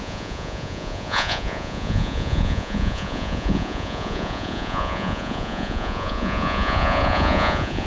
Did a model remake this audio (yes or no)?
yes